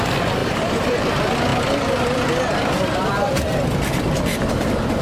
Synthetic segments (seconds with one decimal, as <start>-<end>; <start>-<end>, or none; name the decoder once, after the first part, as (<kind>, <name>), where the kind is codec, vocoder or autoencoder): 0.4-1.1 (vocoder, BigVGAN v2)